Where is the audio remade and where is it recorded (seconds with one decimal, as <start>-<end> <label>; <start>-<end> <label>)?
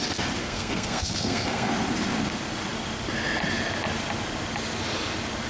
0.0-0.4 recorded; 0.4-1.7 remade; 1.7-5.5 recorded